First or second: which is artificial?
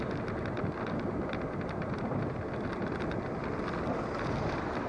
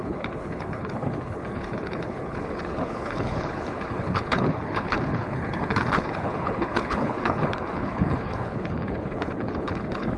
second